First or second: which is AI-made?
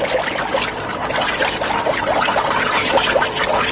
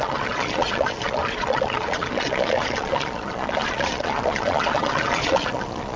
second